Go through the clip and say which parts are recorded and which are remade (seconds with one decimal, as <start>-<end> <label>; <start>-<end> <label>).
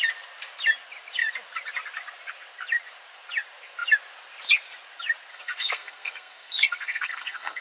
0.0-5.3 recorded; 5.3-7.6 remade